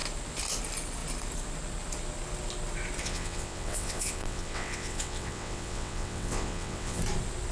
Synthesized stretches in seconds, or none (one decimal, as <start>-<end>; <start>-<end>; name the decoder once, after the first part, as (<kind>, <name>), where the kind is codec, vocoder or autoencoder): 3.0-7.0 (vocoder, WaveNeXt)